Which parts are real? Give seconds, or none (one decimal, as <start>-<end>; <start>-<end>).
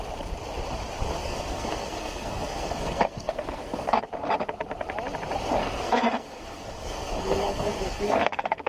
0.0-1.2; 4.0-5.6